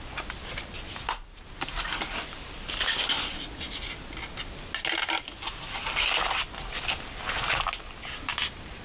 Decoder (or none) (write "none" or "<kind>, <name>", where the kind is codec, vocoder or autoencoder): none